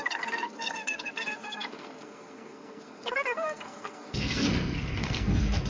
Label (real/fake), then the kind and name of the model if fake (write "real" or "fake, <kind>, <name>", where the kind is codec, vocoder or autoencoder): fake, codec, SNAC